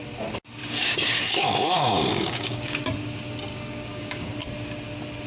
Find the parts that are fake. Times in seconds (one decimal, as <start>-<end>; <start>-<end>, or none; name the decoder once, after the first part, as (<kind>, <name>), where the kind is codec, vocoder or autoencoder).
0.6-2.9 (codec, DAC); 3.5-4.3

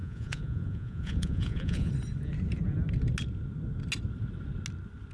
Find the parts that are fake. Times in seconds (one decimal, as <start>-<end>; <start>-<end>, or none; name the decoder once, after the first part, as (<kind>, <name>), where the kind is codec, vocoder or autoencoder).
0.0-1.9 (vocoder, Vocos)

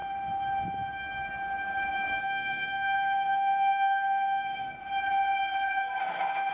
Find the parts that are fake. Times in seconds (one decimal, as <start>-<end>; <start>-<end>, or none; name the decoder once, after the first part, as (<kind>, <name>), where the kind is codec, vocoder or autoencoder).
2.2-4.8 (autoencoder, DAC-VAE); 6.0-6.5

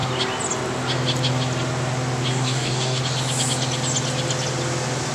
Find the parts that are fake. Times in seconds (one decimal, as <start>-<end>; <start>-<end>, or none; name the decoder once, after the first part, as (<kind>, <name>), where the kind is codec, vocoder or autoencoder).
2.3-3.0 (codec, DAC)

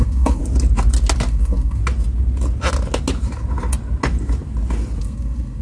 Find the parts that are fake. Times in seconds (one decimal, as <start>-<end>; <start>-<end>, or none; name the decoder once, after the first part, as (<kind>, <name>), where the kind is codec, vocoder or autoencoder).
0.0-0.4 (codec, SNAC); 1.3-1.8; 5.0-5.6

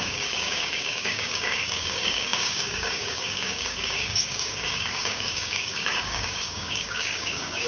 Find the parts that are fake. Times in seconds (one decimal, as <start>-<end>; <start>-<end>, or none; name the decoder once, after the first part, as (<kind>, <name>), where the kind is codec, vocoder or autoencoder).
0.0-7.7 (codec, DAC)

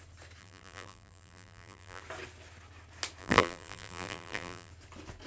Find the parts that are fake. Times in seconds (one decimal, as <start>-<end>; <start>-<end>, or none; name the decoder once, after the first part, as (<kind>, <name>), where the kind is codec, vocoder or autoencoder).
0.4-2.0 (vocoder, BigVGAN v2); 3.2-4.7